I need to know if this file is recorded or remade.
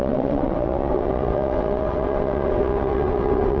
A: remade